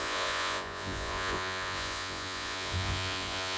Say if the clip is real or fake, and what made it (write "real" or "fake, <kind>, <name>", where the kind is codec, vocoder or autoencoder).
fake, vocoder, Vocos